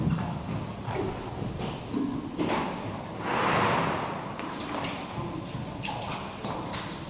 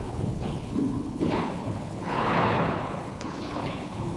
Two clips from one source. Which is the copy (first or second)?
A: second